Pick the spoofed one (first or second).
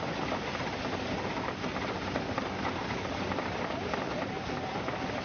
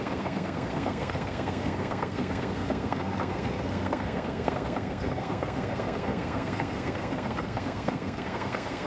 second